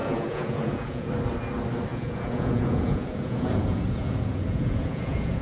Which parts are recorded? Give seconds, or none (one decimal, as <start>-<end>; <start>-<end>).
1.1-1.9